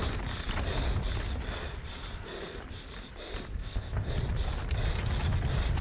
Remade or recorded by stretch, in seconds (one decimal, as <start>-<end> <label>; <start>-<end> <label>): 0.0-3.6 recorded; 3.6-4.1 remade; 4.1-5.8 recorded